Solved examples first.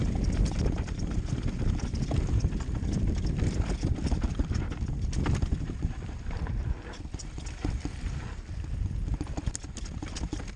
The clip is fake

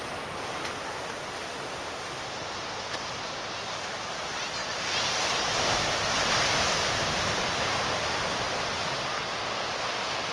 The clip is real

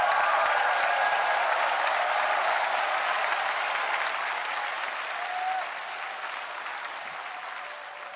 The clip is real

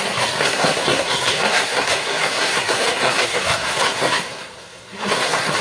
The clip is fake